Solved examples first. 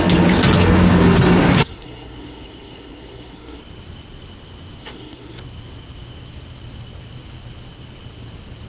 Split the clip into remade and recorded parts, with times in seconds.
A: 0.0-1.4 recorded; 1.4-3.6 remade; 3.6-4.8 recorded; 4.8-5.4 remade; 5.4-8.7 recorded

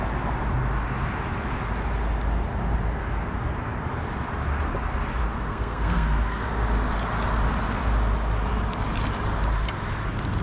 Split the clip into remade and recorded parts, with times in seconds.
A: 0.0-5.5 recorded; 5.5-6.4 remade; 6.4-10.4 recorded

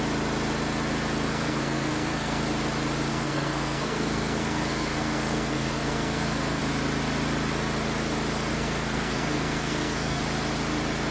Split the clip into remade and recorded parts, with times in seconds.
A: 0.0-1.3 recorded; 1.3-2.4 remade; 2.4-3.1 recorded; 3.1-6.6 remade; 6.6-8.5 recorded; 8.5-10.2 remade; 10.2-11.1 recorded

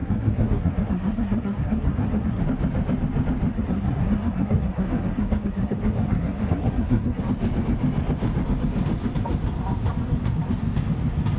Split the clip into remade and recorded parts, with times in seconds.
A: 0.0-2.4 remade; 2.4-3.5 recorded; 3.5-7.2 remade; 7.2-11.4 recorded